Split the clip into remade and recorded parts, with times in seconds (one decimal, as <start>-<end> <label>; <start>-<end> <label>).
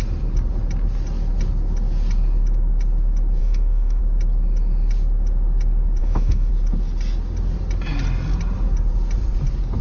0.0-3.4 recorded; 3.4-4.0 remade; 4.0-6.0 recorded; 6.0-6.5 remade; 6.5-9.8 recorded